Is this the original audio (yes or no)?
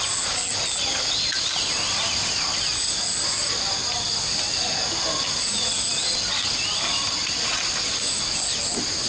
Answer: yes